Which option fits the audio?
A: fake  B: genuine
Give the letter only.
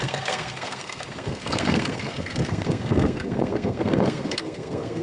A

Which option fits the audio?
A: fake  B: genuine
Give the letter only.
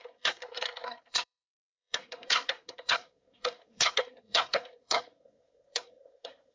A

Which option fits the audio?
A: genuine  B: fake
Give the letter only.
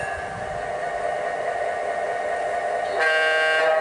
A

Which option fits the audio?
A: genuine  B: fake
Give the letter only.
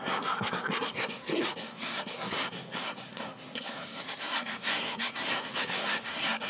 B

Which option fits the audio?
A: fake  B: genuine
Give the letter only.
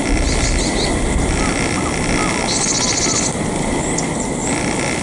B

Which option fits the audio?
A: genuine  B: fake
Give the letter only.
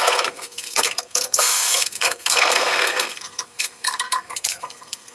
B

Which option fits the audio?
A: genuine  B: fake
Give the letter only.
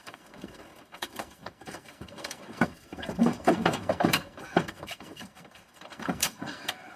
B